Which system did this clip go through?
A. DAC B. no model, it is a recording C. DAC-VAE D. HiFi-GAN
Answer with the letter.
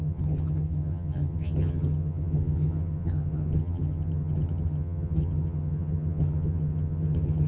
D